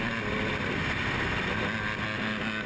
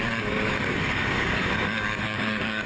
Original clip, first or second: first